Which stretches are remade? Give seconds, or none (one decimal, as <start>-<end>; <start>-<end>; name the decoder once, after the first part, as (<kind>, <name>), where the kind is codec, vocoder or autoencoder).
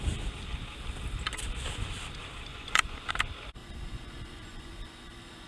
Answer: 2.5-3.1 (vocoder, Vocos); 3.6-5.5